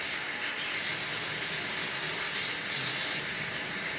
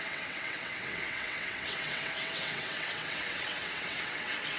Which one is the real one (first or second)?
first